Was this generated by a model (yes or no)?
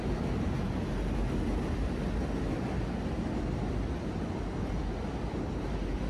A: no